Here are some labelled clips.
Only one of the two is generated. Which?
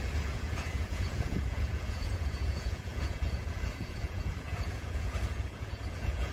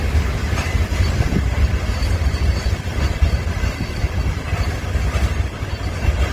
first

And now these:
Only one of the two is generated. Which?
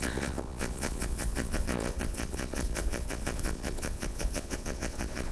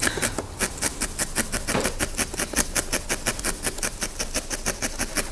first